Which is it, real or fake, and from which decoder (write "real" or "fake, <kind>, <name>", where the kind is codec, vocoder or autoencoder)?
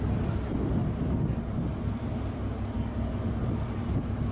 real